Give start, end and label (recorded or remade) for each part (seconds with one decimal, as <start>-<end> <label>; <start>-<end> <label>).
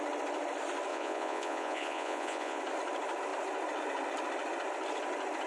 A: 0.0-0.9 recorded; 0.9-2.6 remade; 2.6-5.5 recorded